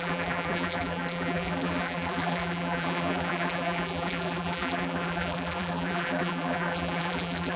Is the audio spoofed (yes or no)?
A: yes